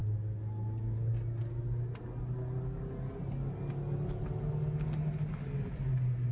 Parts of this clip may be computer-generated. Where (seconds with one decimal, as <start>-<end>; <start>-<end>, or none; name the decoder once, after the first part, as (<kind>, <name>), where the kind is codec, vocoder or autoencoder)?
none